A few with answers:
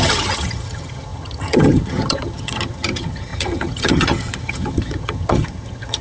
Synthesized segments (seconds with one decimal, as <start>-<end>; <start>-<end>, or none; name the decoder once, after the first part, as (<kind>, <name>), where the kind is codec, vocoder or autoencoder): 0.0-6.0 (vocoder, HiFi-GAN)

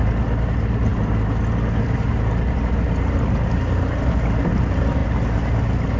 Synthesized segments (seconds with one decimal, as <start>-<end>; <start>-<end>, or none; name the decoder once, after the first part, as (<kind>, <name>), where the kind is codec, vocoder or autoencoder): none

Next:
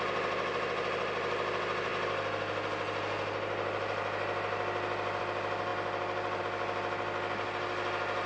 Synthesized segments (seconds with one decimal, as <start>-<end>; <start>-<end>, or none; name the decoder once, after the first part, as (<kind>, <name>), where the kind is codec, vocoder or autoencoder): none

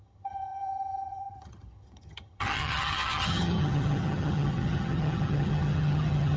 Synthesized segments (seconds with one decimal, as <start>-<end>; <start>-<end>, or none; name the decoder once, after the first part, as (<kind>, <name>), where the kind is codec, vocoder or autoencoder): 0.0-6.4 (vocoder, HiFi-GAN)

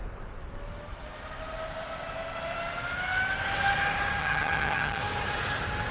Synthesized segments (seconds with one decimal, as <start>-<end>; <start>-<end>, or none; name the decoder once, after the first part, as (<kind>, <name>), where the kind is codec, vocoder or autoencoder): 4.2-5.0 (vocoder, HiFi-GAN)

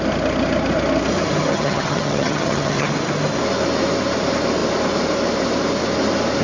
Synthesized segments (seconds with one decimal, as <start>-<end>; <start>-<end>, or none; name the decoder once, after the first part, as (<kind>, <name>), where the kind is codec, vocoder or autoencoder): 1.5-2.9 (vocoder, HiFi-GAN)